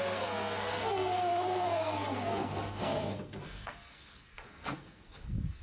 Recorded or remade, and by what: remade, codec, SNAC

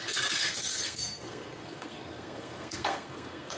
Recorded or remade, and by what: remade, codec, SNAC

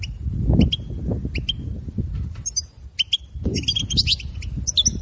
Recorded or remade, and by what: recorded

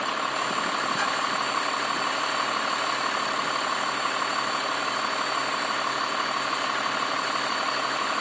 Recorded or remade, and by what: recorded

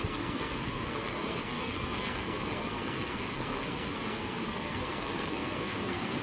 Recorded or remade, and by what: remade, codec, SNAC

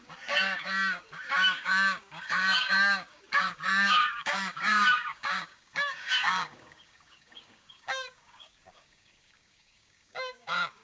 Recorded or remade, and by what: remade, codec, DAC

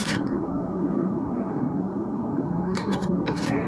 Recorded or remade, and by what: remade, codec, SNAC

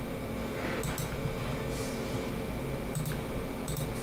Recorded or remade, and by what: recorded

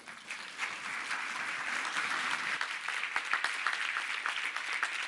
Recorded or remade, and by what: recorded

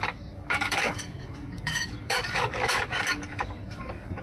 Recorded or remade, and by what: remade, codec, DAC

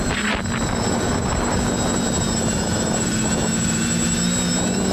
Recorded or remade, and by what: recorded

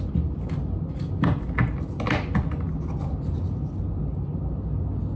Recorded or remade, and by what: recorded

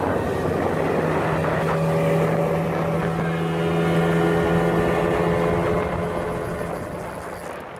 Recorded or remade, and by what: recorded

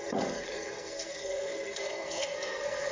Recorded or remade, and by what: remade, codec, SNAC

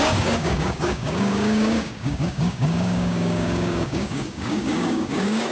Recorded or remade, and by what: remade, codec, DAC